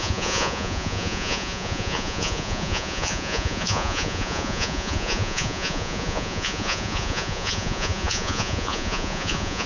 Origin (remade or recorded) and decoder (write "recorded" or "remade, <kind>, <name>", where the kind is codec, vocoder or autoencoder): remade, vocoder, Vocos